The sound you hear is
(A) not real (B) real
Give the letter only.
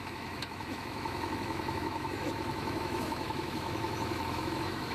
A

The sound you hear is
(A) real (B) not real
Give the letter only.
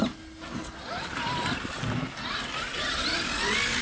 A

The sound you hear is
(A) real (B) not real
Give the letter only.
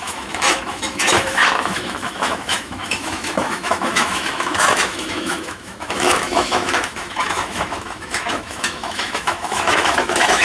B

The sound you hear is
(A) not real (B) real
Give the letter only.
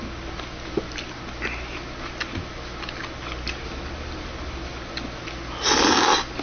B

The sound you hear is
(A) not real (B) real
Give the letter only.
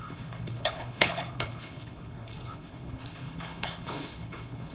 A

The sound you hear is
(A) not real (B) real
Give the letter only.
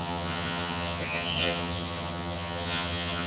A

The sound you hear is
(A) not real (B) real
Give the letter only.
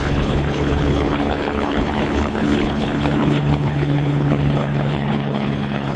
A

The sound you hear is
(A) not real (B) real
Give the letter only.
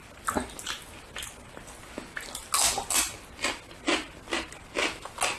B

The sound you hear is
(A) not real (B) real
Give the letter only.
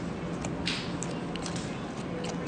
B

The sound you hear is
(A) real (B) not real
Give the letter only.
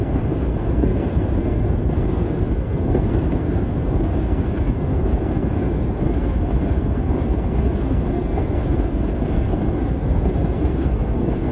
B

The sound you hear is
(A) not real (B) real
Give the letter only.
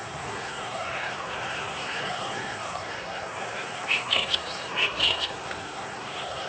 A